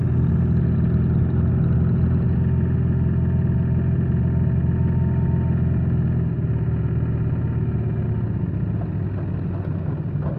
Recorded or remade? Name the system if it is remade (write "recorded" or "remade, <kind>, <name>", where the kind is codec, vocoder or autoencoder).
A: recorded